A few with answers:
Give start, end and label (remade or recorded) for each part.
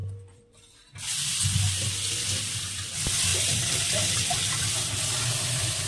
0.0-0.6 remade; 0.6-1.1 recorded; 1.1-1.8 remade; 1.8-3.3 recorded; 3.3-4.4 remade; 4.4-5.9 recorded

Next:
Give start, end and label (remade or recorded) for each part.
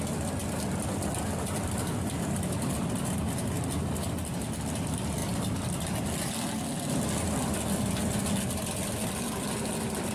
0.0-0.4 recorded; 0.4-2.7 remade; 2.7-5.2 recorded; 5.2-6.3 remade; 6.3-8.0 recorded; 8.0-8.6 remade; 8.6-10.1 recorded